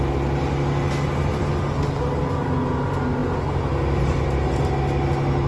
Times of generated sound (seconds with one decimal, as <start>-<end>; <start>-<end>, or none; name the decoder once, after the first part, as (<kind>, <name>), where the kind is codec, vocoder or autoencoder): none